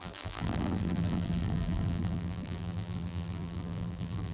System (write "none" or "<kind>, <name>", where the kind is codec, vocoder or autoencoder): vocoder, BigVGAN v2